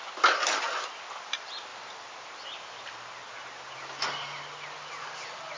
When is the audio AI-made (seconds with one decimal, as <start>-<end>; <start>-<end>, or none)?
none